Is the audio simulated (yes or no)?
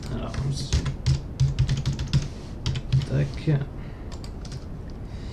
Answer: no